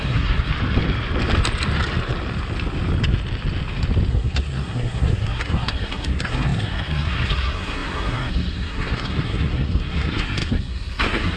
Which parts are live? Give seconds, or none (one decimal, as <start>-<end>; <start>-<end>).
0.5-4.1